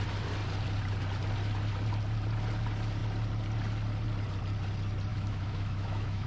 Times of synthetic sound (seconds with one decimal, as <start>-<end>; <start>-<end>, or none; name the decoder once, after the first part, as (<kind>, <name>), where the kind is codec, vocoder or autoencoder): 5.1-6.3 (autoencoder, DAC-VAE)